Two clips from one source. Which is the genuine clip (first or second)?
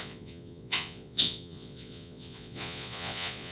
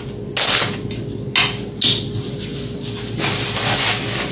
second